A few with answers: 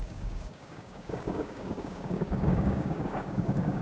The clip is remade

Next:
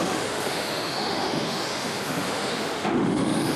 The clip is remade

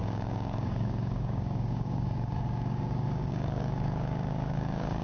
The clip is remade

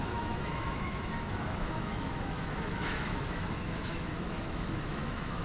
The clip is remade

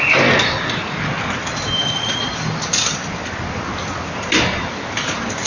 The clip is recorded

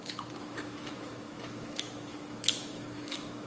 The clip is remade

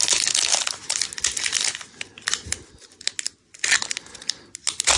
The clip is recorded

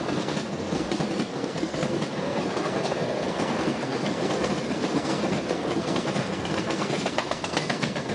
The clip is remade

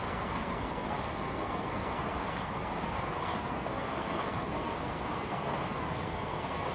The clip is remade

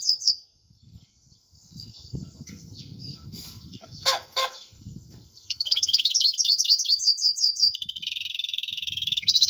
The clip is remade